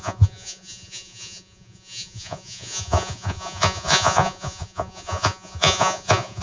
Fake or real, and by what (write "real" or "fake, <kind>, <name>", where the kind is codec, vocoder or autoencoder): fake, vocoder, Vocos